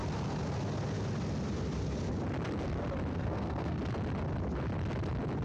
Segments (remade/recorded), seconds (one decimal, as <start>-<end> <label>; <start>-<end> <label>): 0.0-3.1 recorded; 3.1-3.8 remade; 3.8-5.4 recorded